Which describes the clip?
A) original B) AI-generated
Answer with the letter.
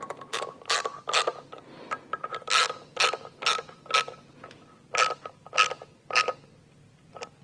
A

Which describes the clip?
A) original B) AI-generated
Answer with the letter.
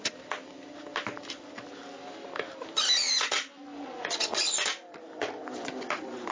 A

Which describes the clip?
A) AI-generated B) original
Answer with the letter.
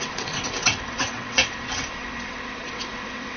A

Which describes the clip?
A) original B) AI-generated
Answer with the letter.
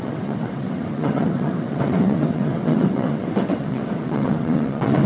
B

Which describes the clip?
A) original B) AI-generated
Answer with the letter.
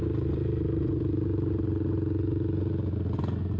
A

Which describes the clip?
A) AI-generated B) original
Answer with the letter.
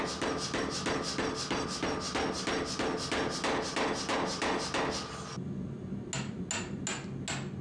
B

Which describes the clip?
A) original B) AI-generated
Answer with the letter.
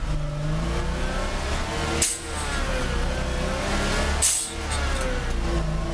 A